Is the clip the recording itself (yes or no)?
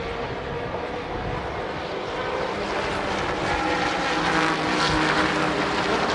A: yes